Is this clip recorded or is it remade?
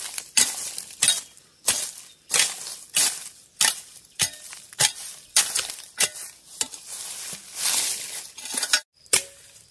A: recorded